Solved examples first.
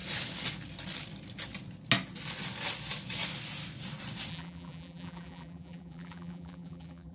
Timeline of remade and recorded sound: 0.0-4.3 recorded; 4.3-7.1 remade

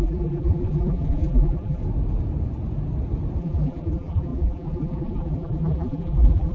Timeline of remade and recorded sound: 0.0-1.8 remade; 1.8-3.4 recorded; 3.4-6.5 remade